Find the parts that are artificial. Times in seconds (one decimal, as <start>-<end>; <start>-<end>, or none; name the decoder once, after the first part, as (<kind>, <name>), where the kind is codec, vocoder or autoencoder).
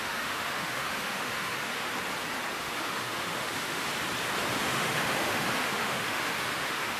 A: 0.0-1.9 (autoencoder, DAC-VAE); 2.5-3.9; 4.6-7.0